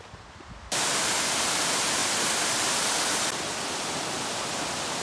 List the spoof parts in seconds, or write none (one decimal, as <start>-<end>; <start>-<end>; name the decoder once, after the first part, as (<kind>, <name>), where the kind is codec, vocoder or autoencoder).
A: 0.0-2.0 (vocoder, BigVGAN v2)